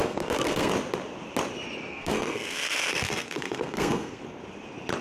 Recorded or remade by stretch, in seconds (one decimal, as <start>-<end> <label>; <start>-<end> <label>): 0.0-0.7 remade; 0.7-1.9 recorded; 1.9-4.2 remade; 4.2-5.0 recorded